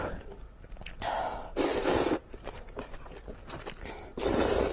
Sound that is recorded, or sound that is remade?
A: recorded